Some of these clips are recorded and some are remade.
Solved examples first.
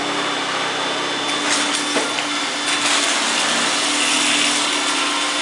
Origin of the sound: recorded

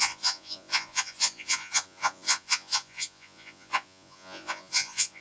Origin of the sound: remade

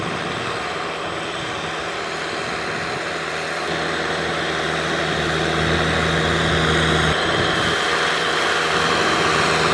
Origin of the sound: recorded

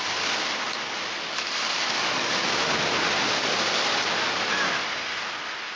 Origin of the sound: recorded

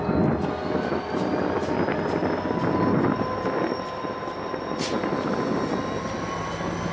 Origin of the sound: recorded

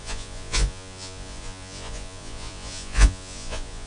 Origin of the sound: remade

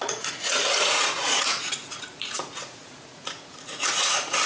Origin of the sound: remade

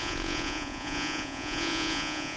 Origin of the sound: remade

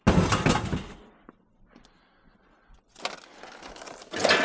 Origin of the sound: recorded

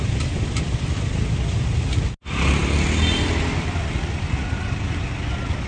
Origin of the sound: recorded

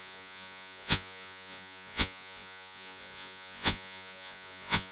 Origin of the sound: remade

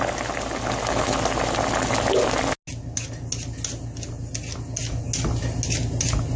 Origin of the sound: recorded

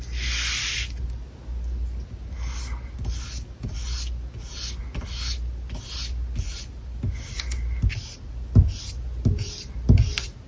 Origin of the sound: recorded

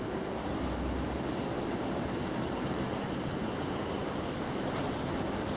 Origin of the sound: recorded